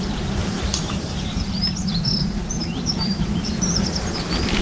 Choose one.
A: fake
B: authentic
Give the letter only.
A